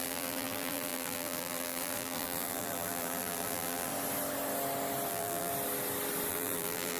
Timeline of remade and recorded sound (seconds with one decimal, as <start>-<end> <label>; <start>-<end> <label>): 0.0-3.9 remade; 3.9-5.1 recorded; 5.1-5.5 remade; 5.5-6.3 recorded; 6.3-7.0 remade